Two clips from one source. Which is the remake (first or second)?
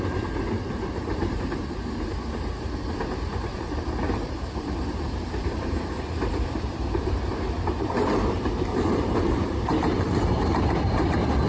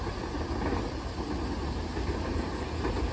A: first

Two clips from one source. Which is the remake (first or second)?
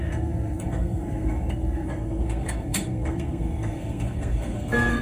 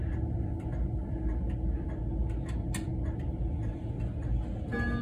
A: first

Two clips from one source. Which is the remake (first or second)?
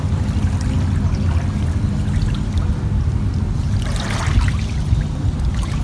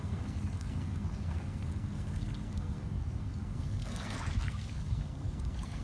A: second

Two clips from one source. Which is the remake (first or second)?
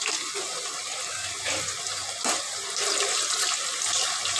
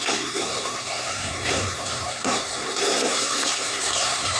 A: second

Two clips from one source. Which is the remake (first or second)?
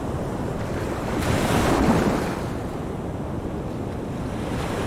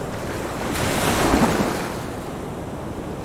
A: first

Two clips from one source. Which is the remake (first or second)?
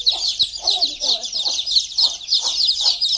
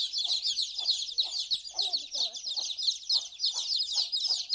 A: first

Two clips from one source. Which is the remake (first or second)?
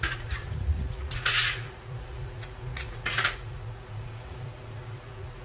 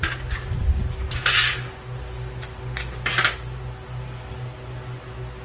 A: first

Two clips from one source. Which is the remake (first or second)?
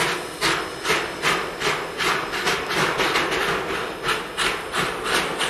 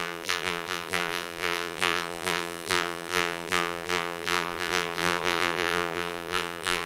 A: second